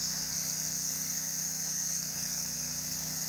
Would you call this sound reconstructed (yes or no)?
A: yes